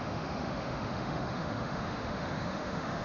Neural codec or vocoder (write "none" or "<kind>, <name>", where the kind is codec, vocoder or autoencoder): autoencoder, DAC-VAE